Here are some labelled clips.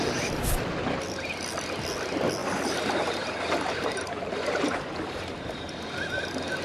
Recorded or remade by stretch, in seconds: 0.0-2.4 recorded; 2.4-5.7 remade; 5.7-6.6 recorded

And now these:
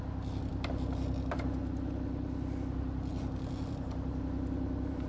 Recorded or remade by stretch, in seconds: 0.0-0.5 remade; 0.5-3.6 recorded; 3.6-5.1 remade

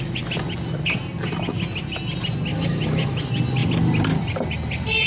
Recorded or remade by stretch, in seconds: 0.0-2.5 recorded; 2.5-3.2 remade; 3.2-5.1 recorded

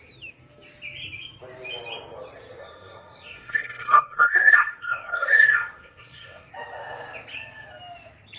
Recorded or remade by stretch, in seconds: 0.0-2.6 recorded; 2.6-6.5 remade; 6.5-8.4 recorded

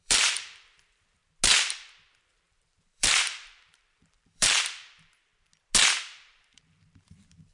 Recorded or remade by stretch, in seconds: 0.0-1.2 remade; 1.2-2.2 recorded; 2.2-5.3 remade; 5.3-6.0 recorded; 6.0-7.5 remade

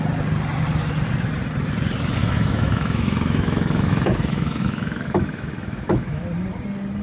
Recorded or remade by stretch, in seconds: 0.0-2.2 recorded; 2.2-6.2 remade; 6.2-7.0 recorded

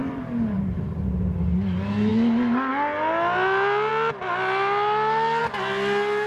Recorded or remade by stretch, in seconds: 0.0-1.3 remade; 1.3-6.3 recorded

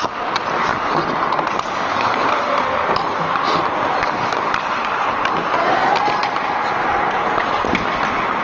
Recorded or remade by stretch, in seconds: 0.0-0.7 recorded; 0.7-2.6 remade; 2.6-6.2 recorded; 6.2-6.9 remade; 6.9-8.4 recorded